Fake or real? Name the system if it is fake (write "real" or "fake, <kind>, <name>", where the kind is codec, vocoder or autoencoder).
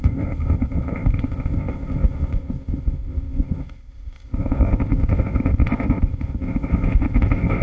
fake, codec, ZipCodec